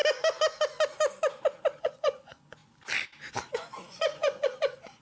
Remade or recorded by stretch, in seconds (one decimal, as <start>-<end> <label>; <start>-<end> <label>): 0.0-1.8 recorded; 1.8-2.6 remade; 2.6-3.5 recorded; 3.5-5.0 remade